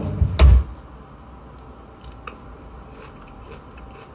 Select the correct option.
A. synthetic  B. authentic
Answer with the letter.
B